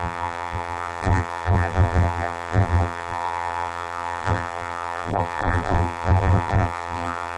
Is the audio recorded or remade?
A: remade